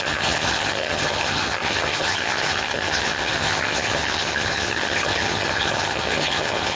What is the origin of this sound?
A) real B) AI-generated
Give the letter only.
B